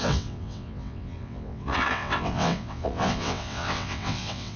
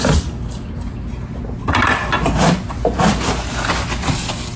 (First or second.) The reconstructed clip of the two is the first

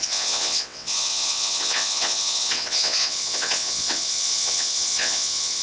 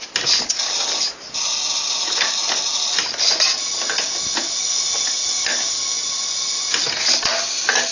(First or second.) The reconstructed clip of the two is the first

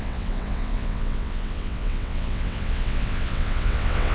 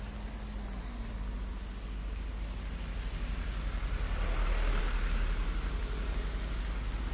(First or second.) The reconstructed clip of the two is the first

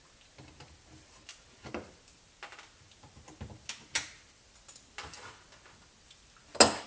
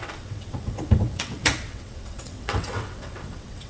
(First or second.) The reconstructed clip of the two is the second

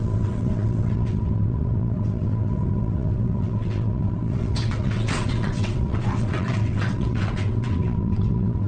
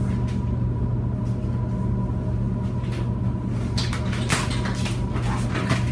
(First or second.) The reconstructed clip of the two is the first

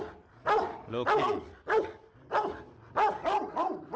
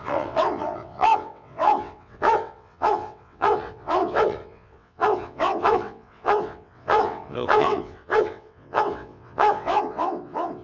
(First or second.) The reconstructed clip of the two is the second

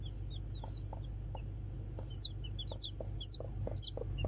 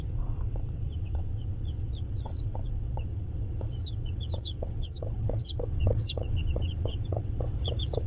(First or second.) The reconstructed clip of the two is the second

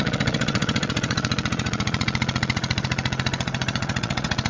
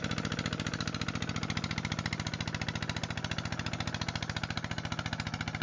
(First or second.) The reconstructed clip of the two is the first